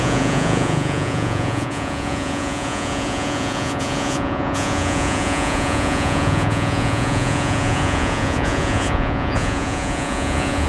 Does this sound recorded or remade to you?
remade